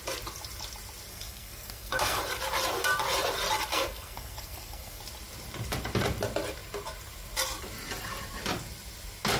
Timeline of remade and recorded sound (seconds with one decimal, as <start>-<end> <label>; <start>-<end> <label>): 0.0-1.1 recorded; 1.1-2.2 remade; 2.2-3.7 recorded; 3.7-5.0 remade; 5.0-9.4 recorded